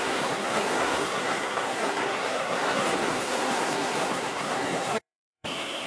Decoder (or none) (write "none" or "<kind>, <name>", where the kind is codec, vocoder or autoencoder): codec, SNAC